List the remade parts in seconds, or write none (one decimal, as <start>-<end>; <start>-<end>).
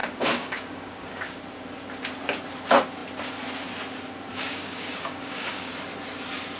0.0-1.4; 4.3-5.7